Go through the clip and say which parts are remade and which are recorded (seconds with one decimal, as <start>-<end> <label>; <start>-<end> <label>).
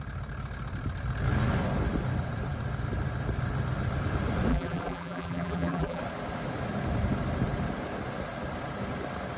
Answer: 0.0-4.5 recorded; 4.5-6.0 remade; 6.0-9.4 recorded